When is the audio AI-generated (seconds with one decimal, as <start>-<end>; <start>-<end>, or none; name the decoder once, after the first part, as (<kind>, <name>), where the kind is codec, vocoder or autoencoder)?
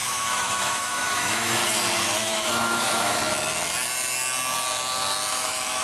0.0-1.6 (autoencoder, DAC-VAE); 2.2-3.2; 5.3-5.8